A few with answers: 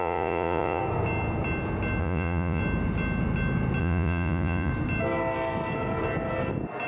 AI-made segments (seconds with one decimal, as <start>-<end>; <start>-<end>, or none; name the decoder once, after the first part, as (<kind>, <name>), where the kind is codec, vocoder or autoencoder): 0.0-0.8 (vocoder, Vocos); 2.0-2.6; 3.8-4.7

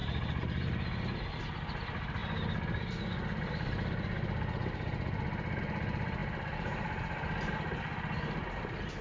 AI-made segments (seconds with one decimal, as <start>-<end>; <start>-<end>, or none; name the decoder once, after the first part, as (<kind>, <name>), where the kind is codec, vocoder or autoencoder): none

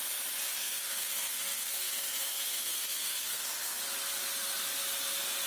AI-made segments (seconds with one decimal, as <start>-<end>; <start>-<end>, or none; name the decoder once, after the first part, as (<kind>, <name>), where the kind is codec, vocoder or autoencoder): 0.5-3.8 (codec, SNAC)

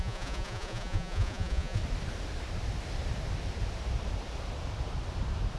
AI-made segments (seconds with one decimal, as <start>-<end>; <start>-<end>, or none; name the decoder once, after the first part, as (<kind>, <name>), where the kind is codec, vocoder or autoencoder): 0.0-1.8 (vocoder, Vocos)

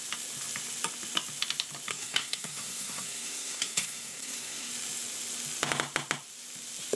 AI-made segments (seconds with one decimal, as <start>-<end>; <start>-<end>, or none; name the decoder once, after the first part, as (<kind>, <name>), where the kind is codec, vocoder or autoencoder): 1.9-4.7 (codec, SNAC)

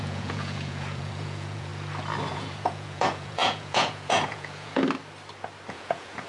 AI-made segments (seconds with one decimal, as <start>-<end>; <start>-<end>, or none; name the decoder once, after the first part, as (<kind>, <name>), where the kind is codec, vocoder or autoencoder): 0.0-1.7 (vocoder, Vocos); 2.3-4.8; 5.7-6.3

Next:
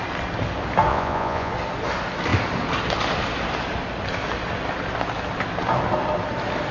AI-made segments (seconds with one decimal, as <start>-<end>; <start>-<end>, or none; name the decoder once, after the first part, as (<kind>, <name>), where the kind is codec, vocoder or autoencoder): 0.9-1.5 (vocoder, Vocos)

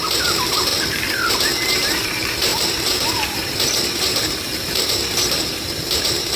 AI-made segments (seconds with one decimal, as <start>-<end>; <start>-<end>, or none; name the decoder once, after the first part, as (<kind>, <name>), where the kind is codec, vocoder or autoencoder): 0.0-0.7 (vocoder, BigVGAN v2); 1.3-6.4